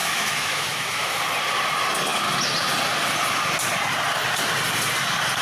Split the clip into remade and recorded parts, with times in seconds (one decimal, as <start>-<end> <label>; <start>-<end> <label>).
0.0-1.2 remade; 1.2-5.4 recorded

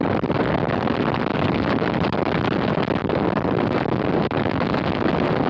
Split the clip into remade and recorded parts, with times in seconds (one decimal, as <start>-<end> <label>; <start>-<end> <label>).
0.0-5.5 remade

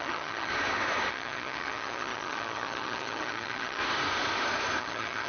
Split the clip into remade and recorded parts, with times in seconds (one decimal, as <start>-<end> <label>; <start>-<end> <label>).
0.0-0.5 remade; 0.5-1.1 recorded; 1.1-3.8 remade; 3.8-4.8 recorded; 4.8-5.3 remade

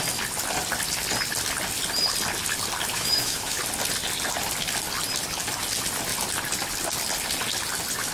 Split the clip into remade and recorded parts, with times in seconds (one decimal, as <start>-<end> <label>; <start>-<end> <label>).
0.0-2.9 recorded; 2.9-3.6 remade; 3.6-8.1 recorded

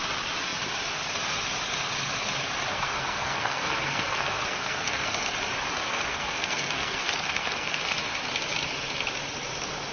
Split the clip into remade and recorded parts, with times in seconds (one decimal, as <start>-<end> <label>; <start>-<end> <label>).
0.0-2.7 recorded; 2.7-5.3 remade; 5.3-5.8 recorded; 5.8-7.8 remade; 7.8-9.9 recorded

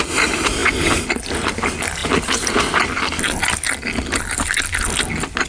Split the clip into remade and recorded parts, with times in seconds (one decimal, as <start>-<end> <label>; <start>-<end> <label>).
0.0-5.5 recorded